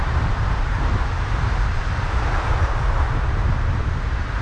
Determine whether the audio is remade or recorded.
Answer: remade